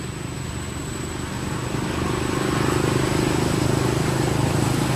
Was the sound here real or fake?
real